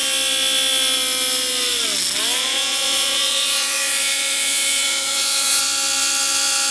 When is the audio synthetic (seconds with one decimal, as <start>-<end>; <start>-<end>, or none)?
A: 2.4-5.6